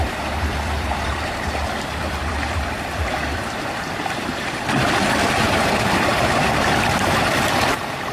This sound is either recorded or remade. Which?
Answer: remade